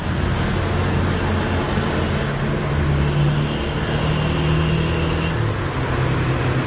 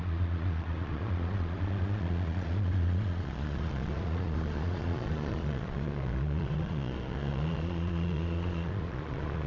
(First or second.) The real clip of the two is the first